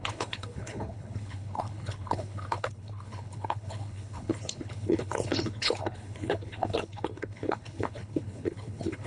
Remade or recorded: remade